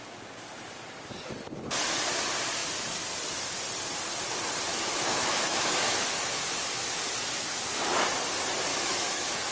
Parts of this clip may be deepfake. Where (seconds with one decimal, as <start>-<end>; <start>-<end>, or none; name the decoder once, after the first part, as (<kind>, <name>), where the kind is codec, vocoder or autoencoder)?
4.7-7.0 (autoencoder, DAC-VAE); 8.7-9.5